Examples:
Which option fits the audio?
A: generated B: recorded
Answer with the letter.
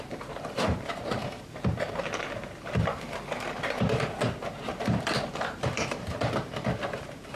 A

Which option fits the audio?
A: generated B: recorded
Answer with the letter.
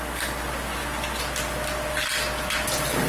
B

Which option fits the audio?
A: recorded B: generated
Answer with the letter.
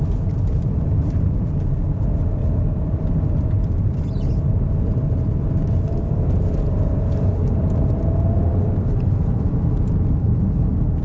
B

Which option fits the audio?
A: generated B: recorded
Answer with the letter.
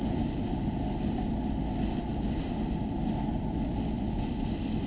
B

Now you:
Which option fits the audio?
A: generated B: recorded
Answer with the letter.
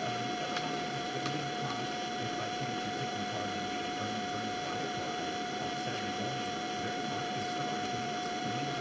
A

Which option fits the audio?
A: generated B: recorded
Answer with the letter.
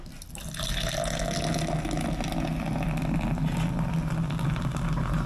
B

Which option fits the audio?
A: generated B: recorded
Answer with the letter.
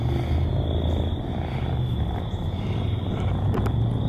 B